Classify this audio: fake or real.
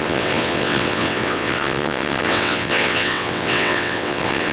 fake